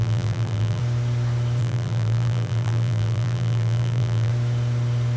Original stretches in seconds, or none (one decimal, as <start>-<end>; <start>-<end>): 0.8-1.6; 4.3-5.2